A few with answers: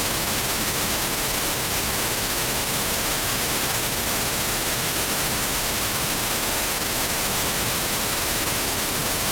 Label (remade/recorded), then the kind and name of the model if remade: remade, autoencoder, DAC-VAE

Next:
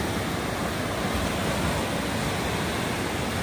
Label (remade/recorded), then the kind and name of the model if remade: recorded